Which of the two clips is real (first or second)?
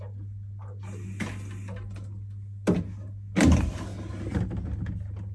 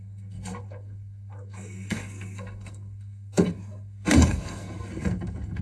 first